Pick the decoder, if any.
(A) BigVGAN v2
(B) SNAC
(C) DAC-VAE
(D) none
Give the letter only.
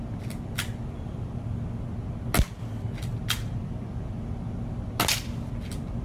D